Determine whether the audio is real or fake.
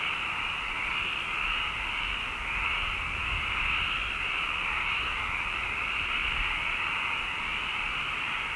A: real